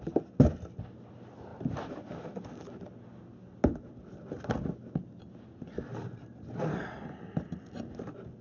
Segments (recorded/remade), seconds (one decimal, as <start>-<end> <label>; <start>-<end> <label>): 0.0-8.4 recorded